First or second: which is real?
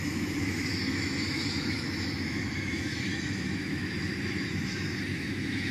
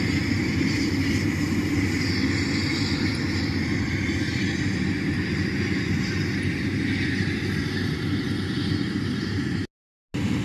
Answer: second